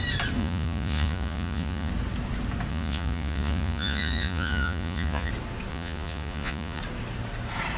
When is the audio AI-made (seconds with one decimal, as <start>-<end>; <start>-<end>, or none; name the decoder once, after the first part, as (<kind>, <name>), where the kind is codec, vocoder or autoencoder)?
0.4-1.9 (vocoder, Vocos); 2.7-5.3; 5.7-6.8